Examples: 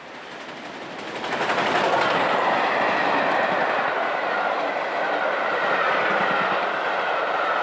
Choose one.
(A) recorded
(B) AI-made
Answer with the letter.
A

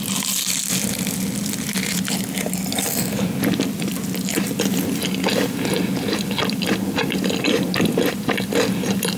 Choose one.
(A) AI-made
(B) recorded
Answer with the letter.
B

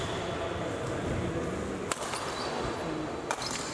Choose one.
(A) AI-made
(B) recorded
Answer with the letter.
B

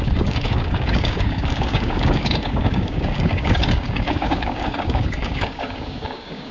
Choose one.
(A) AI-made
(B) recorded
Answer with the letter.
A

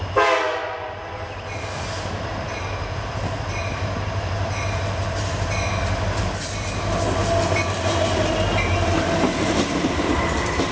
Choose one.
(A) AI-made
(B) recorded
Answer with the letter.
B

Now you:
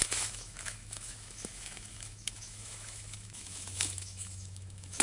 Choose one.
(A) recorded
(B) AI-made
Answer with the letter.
B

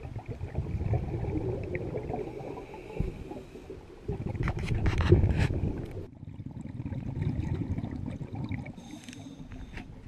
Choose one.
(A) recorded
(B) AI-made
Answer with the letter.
A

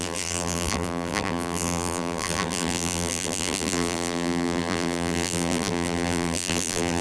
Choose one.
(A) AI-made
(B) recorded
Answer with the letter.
A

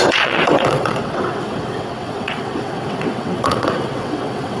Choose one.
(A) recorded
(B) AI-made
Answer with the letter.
B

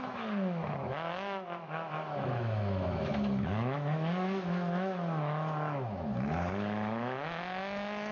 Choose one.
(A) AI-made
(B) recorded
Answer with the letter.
A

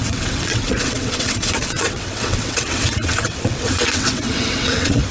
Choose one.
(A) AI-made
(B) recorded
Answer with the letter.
A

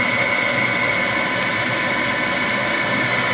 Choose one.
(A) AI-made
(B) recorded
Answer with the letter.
B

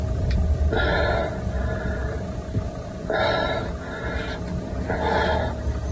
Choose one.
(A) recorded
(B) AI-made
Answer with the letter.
A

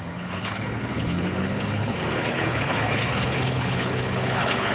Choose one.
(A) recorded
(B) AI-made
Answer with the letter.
B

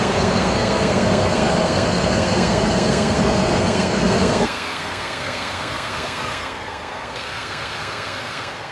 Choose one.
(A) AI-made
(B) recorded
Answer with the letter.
A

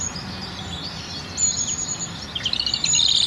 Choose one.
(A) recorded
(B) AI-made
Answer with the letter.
A